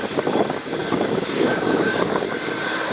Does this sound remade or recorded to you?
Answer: remade